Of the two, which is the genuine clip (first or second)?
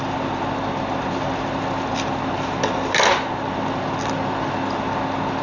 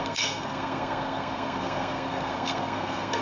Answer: first